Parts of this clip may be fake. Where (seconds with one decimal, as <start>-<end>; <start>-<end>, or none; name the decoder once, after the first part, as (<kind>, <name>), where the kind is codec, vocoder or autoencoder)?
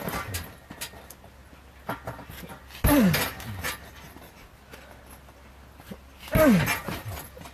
none